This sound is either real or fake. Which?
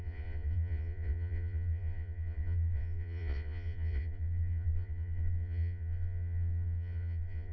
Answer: fake